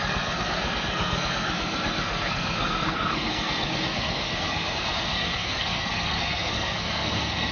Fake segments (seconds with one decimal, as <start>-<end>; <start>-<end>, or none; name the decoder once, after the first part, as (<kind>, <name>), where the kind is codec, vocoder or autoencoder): 0.0-7.5 (codec, SNAC)

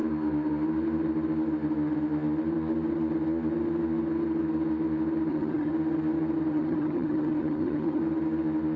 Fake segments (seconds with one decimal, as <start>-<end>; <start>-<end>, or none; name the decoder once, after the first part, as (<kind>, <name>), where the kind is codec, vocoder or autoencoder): 5.3-5.7 (vocoder, HiFi-GAN); 6.5-8.0

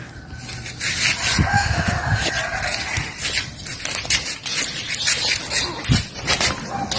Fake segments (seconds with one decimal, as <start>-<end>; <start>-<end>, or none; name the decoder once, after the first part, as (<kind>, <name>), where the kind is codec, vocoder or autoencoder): 1.5-2.3 (autoencoder, DAC-VAE)

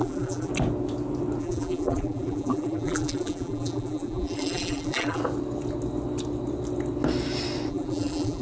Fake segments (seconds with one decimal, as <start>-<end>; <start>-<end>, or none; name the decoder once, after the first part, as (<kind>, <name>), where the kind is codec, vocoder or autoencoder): 0.0-0.5 (vocoder, BigVGAN v2); 1.4-5.2; 7.7-8.4

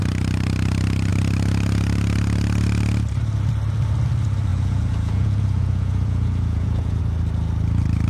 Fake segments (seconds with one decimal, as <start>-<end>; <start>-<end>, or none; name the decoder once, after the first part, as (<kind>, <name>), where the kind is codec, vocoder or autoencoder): 4.5-7.0 (vocoder, Vocos)

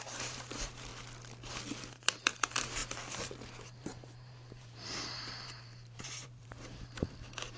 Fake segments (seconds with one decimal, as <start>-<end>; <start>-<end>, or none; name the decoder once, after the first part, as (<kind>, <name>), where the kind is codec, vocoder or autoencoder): 0.0-0.9 (vocoder, BigVGAN v2); 1.8-7.6

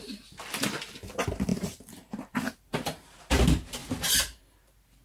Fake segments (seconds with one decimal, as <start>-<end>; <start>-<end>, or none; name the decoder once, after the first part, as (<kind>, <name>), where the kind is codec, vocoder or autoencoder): 1.5-3.3 (vocoder, BigVGAN v2); 3.8-4.4